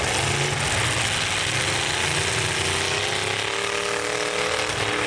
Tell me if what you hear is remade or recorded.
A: recorded